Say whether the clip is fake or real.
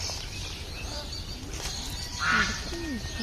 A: real